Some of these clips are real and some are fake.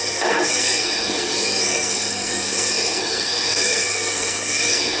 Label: fake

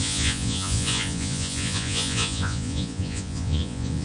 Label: fake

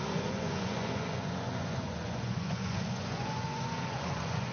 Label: fake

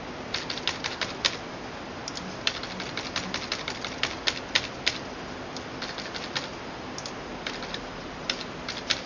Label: real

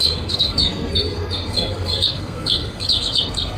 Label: fake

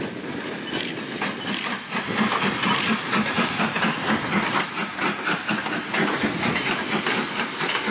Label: real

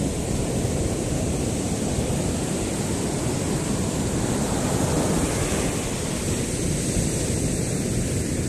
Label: real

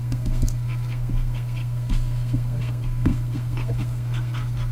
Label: fake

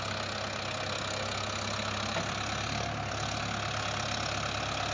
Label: real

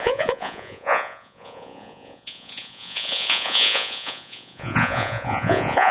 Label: fake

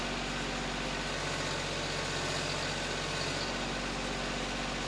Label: real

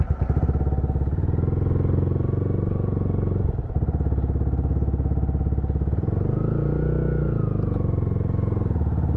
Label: real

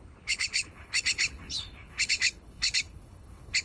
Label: fake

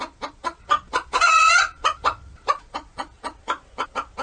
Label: fake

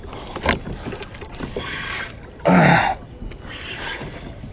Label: real